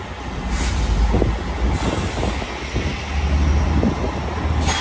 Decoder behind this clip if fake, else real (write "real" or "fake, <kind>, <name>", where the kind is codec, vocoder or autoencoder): real